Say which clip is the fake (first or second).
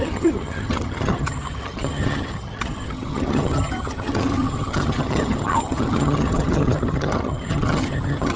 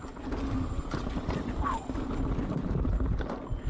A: first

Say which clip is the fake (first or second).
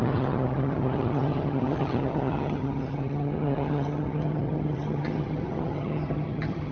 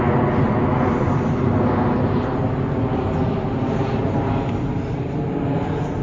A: first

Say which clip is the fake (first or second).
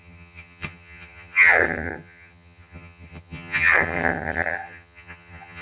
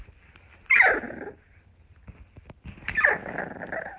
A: first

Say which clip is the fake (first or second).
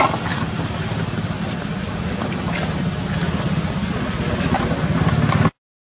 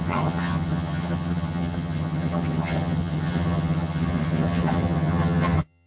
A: second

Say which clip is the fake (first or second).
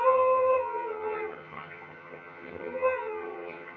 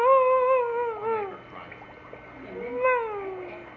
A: first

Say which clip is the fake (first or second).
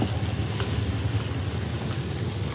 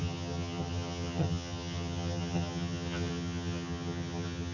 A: second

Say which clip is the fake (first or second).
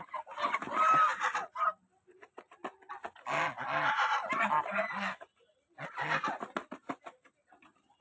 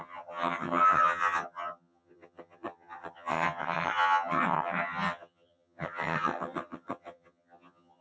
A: second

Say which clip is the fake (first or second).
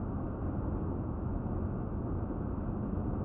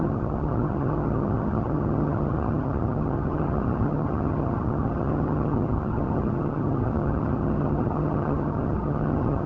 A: second